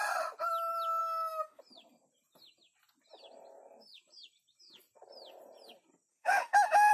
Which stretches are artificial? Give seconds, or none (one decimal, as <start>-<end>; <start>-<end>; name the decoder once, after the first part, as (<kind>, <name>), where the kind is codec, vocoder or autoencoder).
1.0-1.6 (autoencoder, DAC-VAE); 6.1-6.9